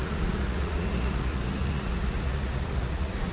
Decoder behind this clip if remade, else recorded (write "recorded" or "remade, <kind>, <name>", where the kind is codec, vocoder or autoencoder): remade, vocoder, Vocos